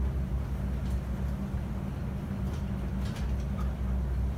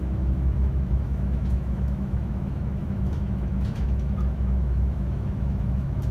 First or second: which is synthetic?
second